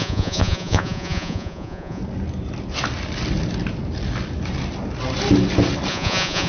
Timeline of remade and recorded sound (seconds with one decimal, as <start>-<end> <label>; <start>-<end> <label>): 0.0-2.0 remade; 2.0-5.9 recorded; 5.9-6.5 remade